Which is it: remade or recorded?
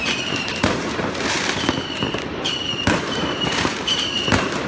remade